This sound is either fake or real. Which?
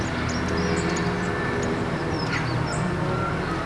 real